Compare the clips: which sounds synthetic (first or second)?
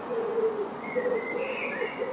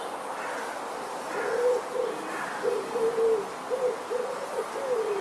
first